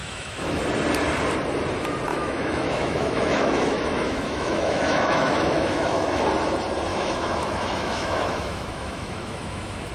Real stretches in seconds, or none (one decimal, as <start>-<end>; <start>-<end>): 0.6-2.1; 6.2-6.9